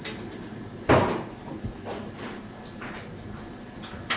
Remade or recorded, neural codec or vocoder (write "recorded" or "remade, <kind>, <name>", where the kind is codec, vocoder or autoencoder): recorded